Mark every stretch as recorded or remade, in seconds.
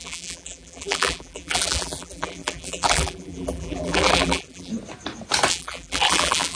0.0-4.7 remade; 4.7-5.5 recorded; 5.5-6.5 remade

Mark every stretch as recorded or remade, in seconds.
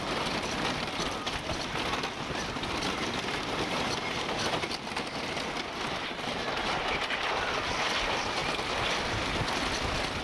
0.0-10.2 recorded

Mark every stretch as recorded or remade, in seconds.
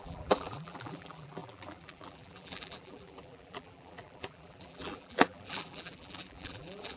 0.0-7.0 remade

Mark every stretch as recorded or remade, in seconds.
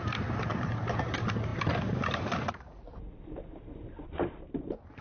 0.0-0.5 recorded; 0.5-1.0 remade; 1.0-1.5 recorded; 1.5-4.1 remade; 4.1-5.0 recorded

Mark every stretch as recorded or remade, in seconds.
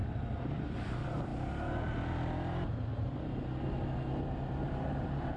0.0-1.3 remade; 1.3-4.5 recorded; 4.5-5.4 remade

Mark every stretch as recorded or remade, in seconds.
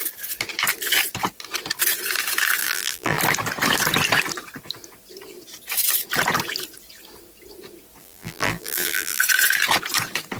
0.0-2.6 recorded; 2.6-3.2 remade; 3.2-8.0 recorded; 8.0-9.2 remade; 9.2-10.4 recorded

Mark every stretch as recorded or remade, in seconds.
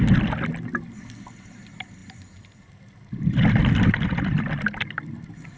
0.0-5.6 recorded